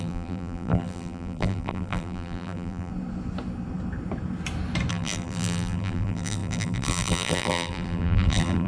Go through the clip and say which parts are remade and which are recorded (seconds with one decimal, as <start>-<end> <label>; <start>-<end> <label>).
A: 0.0-2.9 remade; 2.9-4.9 recorded; 4.9-8.7 remade